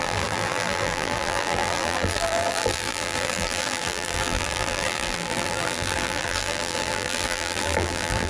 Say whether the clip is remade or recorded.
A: remade